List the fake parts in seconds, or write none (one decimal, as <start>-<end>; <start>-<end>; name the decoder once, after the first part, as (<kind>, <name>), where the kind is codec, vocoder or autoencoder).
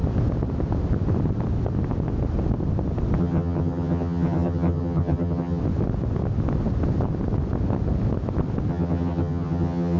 3.2-5.6 (vocoder, HiFi-GAN); 8.7-10.0